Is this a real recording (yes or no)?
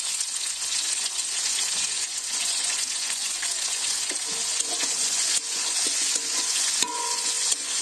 no